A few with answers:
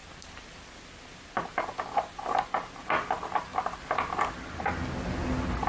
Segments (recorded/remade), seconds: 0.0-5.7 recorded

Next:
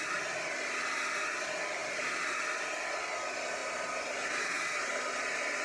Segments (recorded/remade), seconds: 0.0-3.6 recorded; 3.6-5.0 remade; 5.0-5.6 recorded

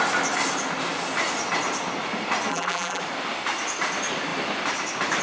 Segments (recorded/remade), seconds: 0.0-2.5 recorded; 2.5-3.0 remade; 3.0-5.2 recorded

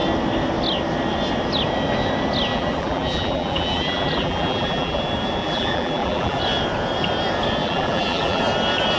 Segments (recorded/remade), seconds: 0.0-2.5 recorded; 2.5-5.0 remade; 5.0-5.4 recorded; 5.4-6.4 remade; 6.4-7.6 recorded; 7.6-8.4 remade; 8.4-9.0 recorded